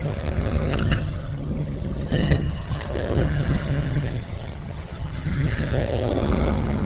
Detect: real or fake fake